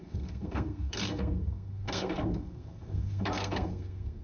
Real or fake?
fake